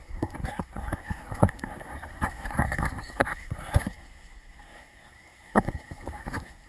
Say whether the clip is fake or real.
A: fake